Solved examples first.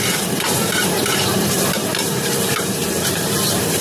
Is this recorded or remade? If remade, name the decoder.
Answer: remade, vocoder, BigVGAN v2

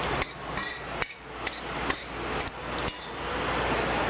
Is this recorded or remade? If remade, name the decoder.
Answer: recorded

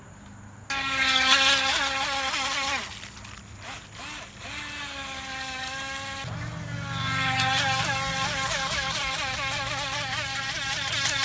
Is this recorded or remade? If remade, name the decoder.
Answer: recorded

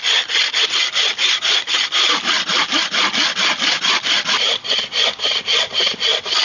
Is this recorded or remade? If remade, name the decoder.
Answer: recorded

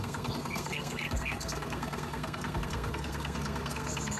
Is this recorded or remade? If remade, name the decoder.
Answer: remade, codec, SNAC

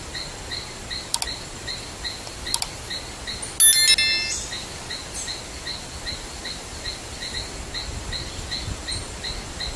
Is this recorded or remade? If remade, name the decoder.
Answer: recorded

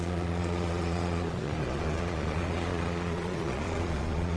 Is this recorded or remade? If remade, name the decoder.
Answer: remade, vocoder, Vocos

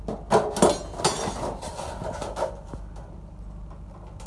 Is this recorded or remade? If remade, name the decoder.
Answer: recorded